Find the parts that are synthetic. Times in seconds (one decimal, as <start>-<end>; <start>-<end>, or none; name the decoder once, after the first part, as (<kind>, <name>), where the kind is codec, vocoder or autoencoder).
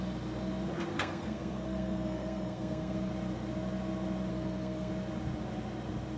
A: 0.9-3.1 (codec, SNAC); 4.3-4.9